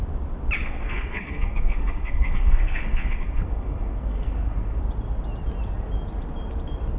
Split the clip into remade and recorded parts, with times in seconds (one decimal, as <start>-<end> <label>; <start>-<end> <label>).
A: 0.0-0.6 recorded; 0.6-4.8 remade; 4.8-7.0 recorded